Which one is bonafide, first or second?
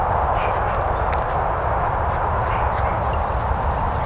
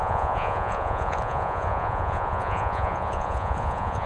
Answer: first